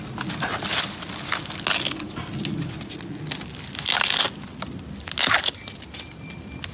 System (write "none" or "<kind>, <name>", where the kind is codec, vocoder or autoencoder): none